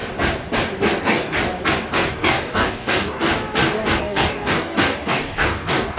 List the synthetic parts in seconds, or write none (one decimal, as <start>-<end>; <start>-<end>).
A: 1.0-1.4; 2.1-3.3; 4.0-6.0